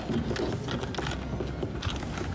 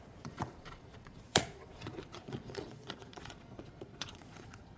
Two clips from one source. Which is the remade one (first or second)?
second